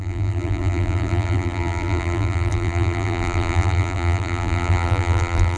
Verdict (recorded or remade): remade